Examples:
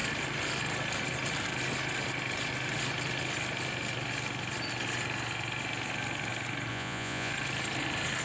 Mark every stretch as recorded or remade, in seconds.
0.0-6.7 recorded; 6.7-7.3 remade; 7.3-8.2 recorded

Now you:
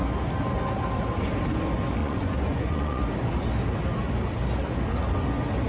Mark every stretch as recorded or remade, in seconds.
0.0-2.0 recorded; 2.0-3.0 remade; 3.0-5.7 recorded

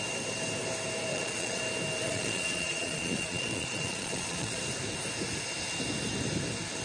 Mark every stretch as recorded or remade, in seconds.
0.0-1.1 recorded; 1.1-1.6 remade; 1.6-2.0 recorded; 2.0-4.6 remade; 4.6-6.8 recorded

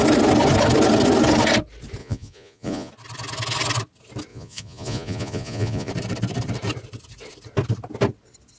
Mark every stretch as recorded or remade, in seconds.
0.0-2.0 recorded; 2.0-2.9 remade; 2.9-4.3 recorded; 4.3-5.9 remade; 5.9-8.6 recorded

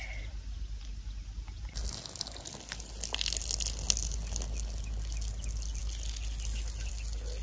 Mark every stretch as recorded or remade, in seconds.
0.0-7.4 recorded

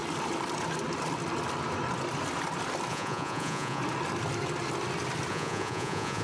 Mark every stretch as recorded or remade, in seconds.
0.0-2.9 recorded; 2.9-3.8 remade; 3.8-5.3 recorded; 5.3-6.2 remade